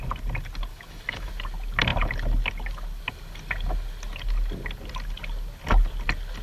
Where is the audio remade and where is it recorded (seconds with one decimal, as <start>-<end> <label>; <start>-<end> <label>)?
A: 0.0-0.7 recorded; 0.7-1.3 remade; 1.3-6.4 recorded